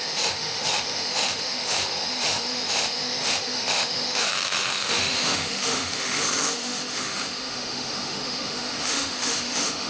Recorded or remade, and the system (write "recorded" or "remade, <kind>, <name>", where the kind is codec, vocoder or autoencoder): remade, autoencoder, DAC-VAE